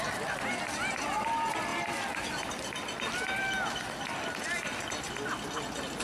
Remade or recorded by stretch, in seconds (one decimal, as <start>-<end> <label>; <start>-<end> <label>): 0.0-6.0 recorded